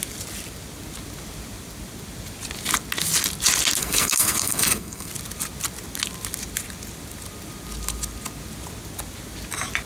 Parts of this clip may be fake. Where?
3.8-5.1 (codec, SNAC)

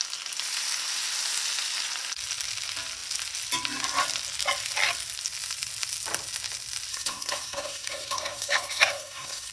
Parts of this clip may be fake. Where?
6.9-9.5 (codec, SNAC)

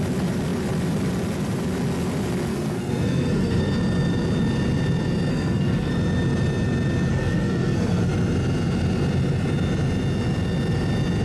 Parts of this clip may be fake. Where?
2.5-3.6 (codec, SNAC); 5.3-5.9; 7.1-8.1

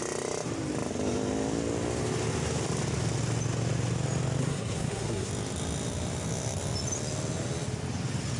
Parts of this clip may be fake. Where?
4.4-5.3 (codec, SNAC)